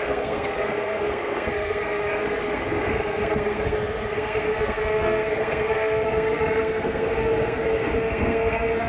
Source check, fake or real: fake